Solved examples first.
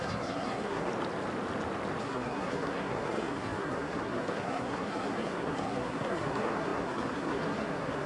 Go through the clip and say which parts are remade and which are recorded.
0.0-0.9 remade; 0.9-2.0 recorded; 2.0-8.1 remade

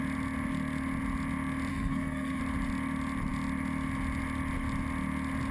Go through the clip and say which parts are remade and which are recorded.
0.0-1.7 recorded; 1.7-2.4 remade; 2.4-5.5 recorded

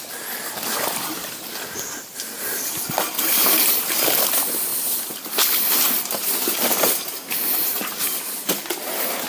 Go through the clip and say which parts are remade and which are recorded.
0.0-1.2 recorded; 1.2-2.7 remade; 2.7-9.3 recorded

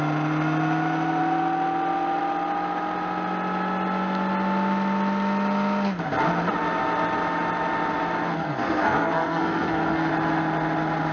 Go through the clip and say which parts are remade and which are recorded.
0.0-8.3 recorded; 8.3-10.1 remade; 10.1-11.1 recorded

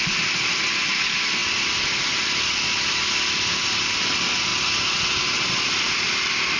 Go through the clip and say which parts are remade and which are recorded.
0.0-4.5 remade; 4.5-5.8 recorded; 5.8-6.6 remade

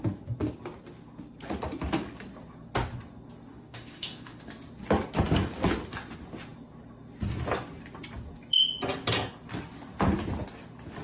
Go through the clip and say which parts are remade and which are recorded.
0.0-3.5 recorded; 3.5-4.4 remade; 4.4-11.0 recorded